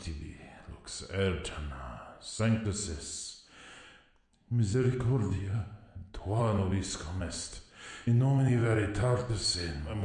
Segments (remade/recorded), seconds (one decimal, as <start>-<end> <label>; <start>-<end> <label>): 0.0-2.8 recorded; 2.8-6.4 remade; 6.4-8.6 recorded; 8.6-9.2 remade; 9.2-10.0 recorded